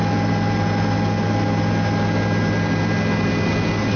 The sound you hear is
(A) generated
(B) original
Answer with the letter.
B